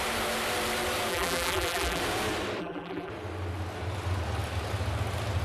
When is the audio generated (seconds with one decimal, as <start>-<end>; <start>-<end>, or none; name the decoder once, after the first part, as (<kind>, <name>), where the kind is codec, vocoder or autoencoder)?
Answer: 1.1-2.0 (vocoder, BigVGAN v2); 2.6-3.1